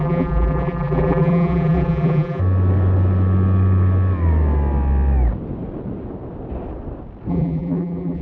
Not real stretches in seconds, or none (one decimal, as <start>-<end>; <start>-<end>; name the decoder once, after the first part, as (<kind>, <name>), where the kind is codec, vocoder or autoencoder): 0.0-2.4 (vocoder, BigVGAN v2); 7.3-8.2